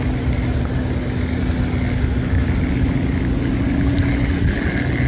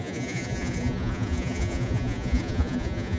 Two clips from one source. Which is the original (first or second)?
first